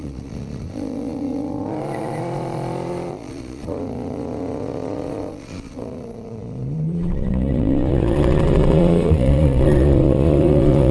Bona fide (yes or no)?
no